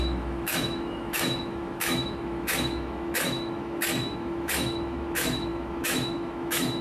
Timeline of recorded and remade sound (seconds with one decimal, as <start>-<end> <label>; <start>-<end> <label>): 0.0-6.8 remade